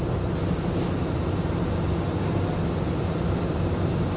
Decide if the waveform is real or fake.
real